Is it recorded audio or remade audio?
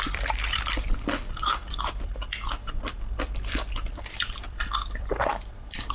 remade